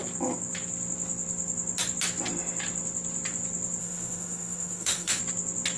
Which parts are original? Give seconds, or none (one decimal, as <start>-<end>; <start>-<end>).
0.0-3.8; 5.2-5.8